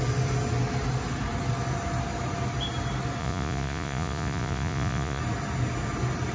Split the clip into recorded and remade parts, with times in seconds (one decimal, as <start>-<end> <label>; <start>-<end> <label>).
0.0-3.2 recorded; 3.2-5.2 remade; 5.2-6.3 recorded